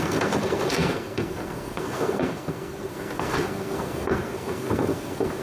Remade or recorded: remade